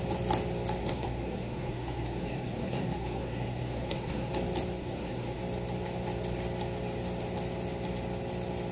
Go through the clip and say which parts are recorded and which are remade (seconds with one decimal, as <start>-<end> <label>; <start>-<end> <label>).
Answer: 0.0-0.8 recorded; 0.8-4.3 remade; 4.3-4.8 recorded; 4.8-5.4 remade; 5.4-8.7 recorded